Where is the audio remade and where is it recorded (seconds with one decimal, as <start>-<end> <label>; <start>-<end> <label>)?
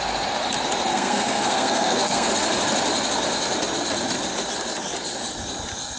0.0-0.9 recorded; 0.9-2.3 remade; 2.3-6.0 recorded